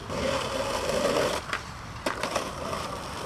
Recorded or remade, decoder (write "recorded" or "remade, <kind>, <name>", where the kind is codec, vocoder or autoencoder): remade, vocoder, BigVGAN v2